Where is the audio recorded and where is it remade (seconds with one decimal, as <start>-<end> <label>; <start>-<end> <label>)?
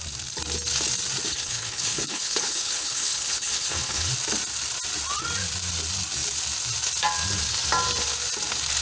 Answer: 0.0-1.3 recorded; 1.3-4.1 remade; 4.1-8.8 recorded